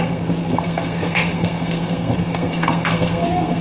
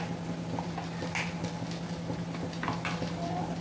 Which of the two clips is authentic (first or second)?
second